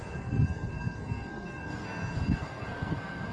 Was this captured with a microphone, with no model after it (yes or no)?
no